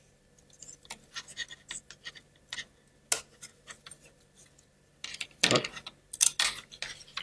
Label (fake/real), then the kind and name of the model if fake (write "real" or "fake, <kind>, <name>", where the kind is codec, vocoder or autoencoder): real